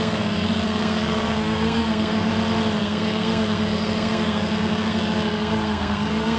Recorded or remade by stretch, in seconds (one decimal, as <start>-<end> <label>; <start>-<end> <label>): 0.0-2.3 remade; 2.3-2.8 recorded; 2.8-6.4 remade